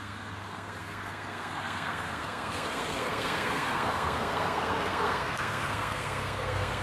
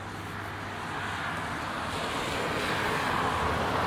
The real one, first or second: second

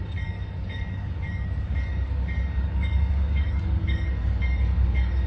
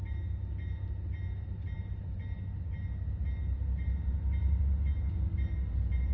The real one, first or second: second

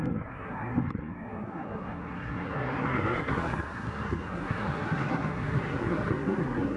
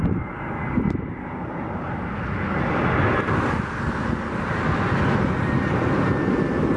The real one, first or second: second